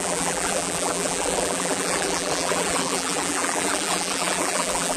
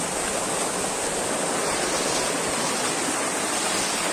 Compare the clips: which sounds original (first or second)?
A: second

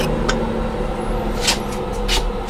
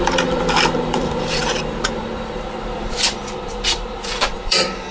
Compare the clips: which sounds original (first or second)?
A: first